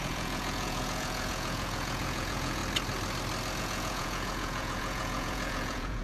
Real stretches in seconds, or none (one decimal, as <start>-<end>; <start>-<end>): 2.6-3.6